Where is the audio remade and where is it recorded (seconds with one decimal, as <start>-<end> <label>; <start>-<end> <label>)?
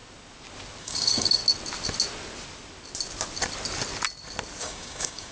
0.0-0.8 recorded; 0.8-1.4 remade; 1.4-4.6 recorded; 4.6-5.3 remade